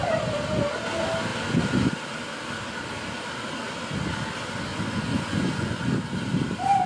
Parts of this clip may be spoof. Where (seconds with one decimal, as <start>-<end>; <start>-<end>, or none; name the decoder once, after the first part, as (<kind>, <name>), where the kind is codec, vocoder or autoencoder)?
4.7-5.9 (vocoder, Vocos)